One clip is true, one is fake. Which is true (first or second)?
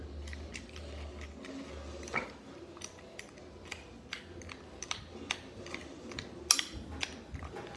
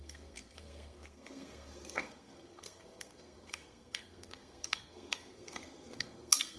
first